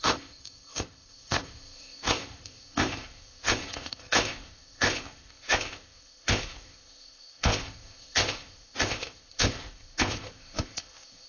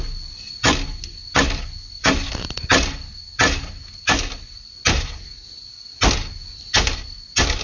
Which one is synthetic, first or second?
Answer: first